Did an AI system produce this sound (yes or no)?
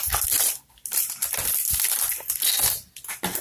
no